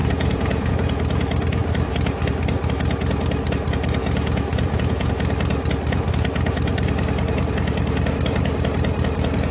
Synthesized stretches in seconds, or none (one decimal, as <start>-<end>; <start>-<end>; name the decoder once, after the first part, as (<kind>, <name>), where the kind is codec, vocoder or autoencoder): 0.0-0.7 (vocoder, Vocos); 4.0-5.1